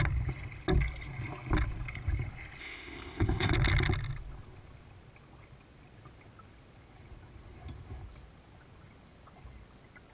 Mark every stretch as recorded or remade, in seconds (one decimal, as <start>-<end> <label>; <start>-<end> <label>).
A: 0.0-2.6 recorded; 2.6-3.5 remade; 3.5-10.1 recorded